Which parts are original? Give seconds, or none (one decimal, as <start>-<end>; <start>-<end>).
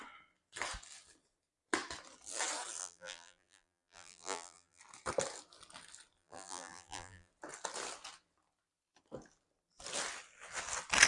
0.0-2.8; 4.8-6.2; 7.3-11.1